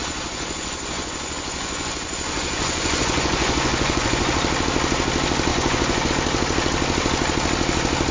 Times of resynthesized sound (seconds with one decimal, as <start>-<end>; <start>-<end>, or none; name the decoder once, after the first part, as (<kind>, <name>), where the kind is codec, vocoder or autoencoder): 0.0-4.3 (vocoder, Vocos); 5.5-6.1